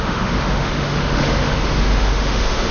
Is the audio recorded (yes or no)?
no